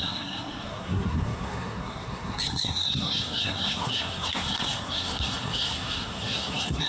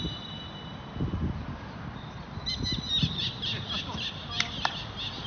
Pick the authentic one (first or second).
second